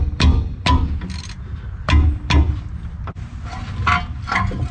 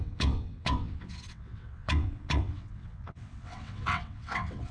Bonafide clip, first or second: first